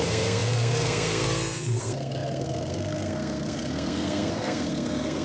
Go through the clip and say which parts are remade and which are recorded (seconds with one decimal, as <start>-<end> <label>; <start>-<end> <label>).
0.0-5.2 remade